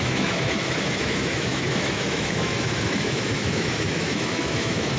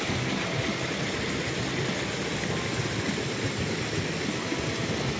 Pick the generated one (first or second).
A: first